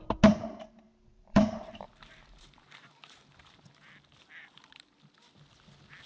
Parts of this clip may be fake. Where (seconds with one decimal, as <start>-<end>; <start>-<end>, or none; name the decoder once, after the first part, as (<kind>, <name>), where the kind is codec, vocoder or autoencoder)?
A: 1.1-3.7 (vocoder, BigVGAN v2)